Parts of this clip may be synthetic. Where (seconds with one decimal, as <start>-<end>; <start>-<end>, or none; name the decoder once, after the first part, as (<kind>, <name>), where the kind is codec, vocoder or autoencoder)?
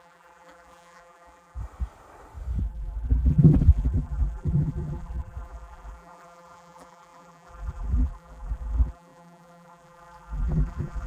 0.0-1.6 (vocoder, BigVGAN v2); 2.6-11.1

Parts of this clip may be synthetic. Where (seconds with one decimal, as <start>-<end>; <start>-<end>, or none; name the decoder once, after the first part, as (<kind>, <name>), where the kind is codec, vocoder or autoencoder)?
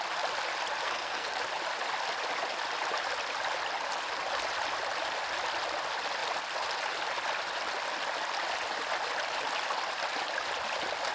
0.8-1.4 (codec, SNAC)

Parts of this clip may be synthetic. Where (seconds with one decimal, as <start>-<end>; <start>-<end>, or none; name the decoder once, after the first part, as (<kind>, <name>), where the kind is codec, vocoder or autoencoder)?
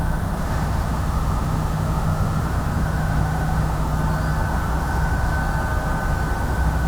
0.0-3.9 (autoencoder, DAC-VAE); 4.5-5.4; 6.4-6.9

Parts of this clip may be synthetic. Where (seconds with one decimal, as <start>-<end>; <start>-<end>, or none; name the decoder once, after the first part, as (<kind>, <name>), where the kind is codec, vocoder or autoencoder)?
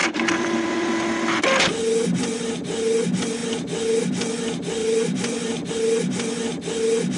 0.0-0.9 (vocoder, BigVGAN v2); 4.8-5.7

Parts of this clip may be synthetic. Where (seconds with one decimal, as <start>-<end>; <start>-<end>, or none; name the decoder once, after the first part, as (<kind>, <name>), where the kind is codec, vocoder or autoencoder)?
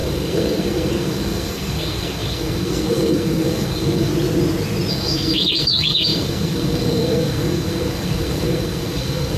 0.0-4.1 (codec, SNAC); 4.9-9.4